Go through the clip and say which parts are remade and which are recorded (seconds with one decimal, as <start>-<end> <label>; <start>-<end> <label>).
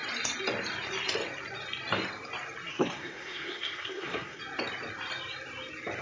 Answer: 0.0-2.7 recorded; 2.7-4.4 remade; 4.4-6.0 recorded